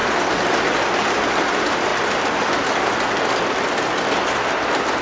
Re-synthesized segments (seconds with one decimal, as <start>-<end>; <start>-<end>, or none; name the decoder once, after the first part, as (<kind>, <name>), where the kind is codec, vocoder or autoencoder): none

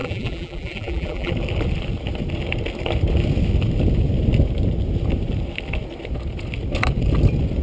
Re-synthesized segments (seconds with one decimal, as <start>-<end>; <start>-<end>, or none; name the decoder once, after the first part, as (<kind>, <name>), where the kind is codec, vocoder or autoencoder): 0.0-1.3 (vocoder, BigVGAN v2)

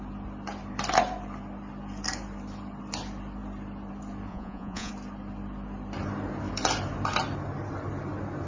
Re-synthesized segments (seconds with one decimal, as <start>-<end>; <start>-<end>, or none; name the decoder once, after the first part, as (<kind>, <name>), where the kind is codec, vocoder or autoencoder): 4.3-4.9 (vocoder, Vocos)

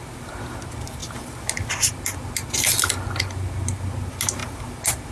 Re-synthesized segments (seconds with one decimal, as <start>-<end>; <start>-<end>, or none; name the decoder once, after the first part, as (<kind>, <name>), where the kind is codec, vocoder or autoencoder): none

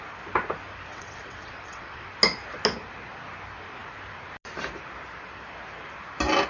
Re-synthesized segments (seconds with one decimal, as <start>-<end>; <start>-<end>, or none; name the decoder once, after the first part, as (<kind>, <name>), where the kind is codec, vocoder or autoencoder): 0.9-2.1 (vocoder, WaveNeXt)

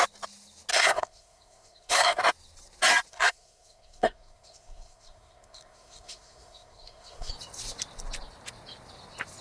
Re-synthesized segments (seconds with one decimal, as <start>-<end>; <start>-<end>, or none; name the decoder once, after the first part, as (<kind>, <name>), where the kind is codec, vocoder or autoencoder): 0.7-2.2 (codec, SNAC); 3.1-7.3

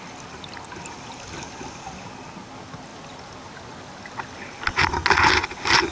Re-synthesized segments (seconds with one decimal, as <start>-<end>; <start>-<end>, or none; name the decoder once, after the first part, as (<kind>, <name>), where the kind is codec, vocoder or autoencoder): none